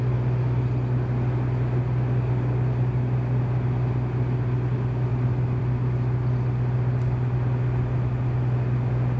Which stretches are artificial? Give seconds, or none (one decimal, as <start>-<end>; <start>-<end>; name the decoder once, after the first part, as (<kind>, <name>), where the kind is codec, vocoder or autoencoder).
none